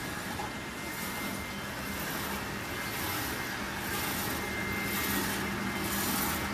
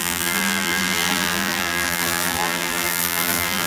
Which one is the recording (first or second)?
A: first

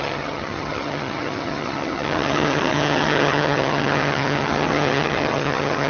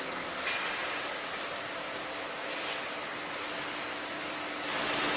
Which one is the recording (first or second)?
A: second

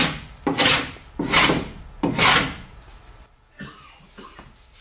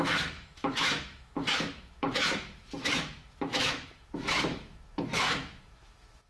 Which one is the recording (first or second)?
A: first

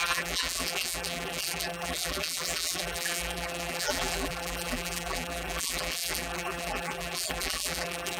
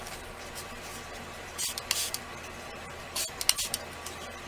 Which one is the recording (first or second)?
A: second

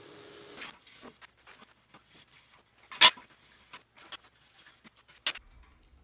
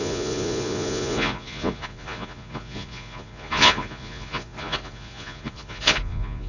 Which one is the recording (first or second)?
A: first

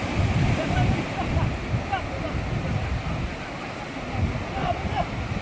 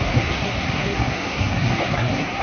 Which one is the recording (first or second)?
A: first